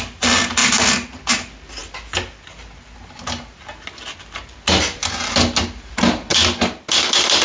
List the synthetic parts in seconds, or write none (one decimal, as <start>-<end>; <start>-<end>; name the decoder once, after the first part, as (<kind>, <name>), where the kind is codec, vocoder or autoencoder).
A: none